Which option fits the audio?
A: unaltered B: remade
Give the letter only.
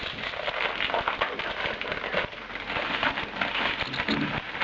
A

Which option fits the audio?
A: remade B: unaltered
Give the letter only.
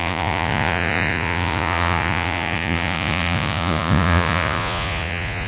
A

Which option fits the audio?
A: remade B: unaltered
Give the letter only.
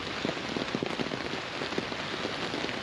B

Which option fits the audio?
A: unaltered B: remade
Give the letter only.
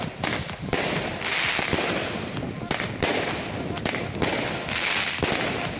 A